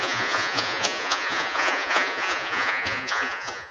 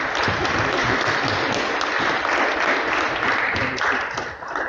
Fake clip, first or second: first